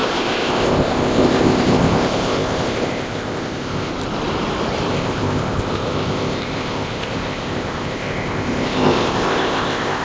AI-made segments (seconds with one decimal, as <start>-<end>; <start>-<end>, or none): 0.0-3.9; 4.9-10.0